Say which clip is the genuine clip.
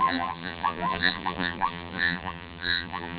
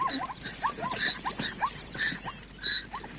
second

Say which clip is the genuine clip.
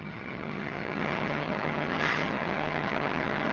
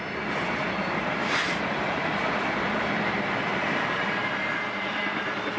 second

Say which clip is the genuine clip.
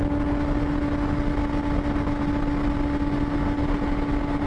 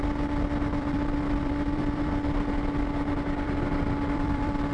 first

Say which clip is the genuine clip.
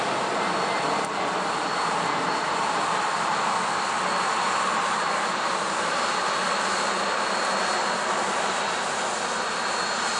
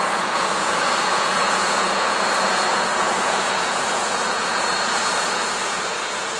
first